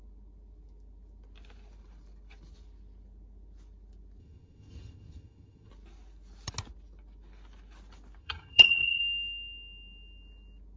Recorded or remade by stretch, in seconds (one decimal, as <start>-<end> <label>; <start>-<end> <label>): 0.0-4.2 recorded; 4.2-5.7 remade; 5.7-8.2 recorded; 8.2-9.0 remade; 9.0-10.8 recorded